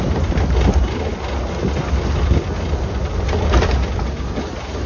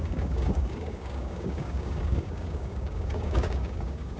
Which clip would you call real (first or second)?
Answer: first